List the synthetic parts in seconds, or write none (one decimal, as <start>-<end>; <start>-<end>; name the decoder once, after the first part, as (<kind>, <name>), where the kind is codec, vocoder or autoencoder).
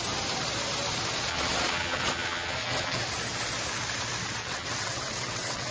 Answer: 1.3-3.0 (vocoder, WaveNeXt); 4.4-5.7